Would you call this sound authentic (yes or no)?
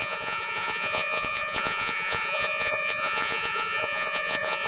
no